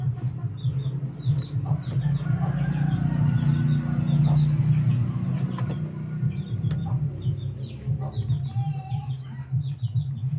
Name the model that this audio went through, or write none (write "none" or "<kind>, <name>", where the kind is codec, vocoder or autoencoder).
none